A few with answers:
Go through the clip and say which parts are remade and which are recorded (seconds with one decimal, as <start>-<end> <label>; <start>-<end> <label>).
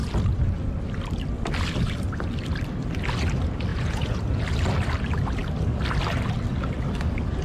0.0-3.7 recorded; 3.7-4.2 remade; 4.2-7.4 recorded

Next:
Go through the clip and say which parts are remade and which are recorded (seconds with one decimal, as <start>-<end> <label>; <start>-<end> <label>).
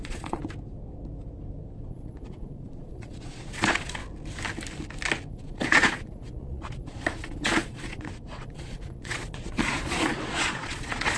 0.0-0.4 remade; 0.4-1.9 recorded; 1.9-4.0 remade; 4.0-5.3 recorded; 5.3-11.2 remade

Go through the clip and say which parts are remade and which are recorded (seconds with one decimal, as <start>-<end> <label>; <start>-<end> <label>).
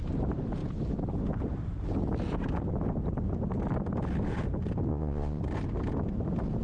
0.0-4.9 recorded; 4.9-5.4 remade; 5.4-6.6 recorded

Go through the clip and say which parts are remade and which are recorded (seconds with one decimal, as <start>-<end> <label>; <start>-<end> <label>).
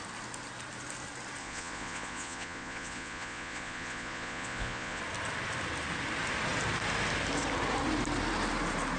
0.0-1.4 recorded; 1.4-5.0 remade; 5.0-9.0 recorded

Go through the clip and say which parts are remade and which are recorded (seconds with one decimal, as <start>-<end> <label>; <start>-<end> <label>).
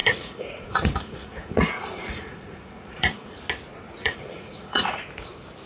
0.0-3.4 remade; 3.4-4.0 recorded; 4.0-5.0 remade; 5.0-5.7 recorded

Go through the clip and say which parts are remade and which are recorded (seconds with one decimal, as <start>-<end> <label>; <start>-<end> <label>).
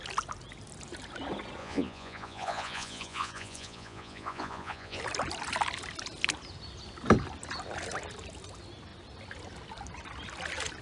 0.0-1.6 recorded; 1.6-5.0 remade; 5.0-10.8 recorded